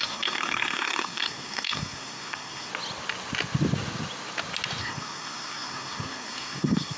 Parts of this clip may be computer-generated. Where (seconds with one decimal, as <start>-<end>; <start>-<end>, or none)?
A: 0.0-2.7; 4.8-7.0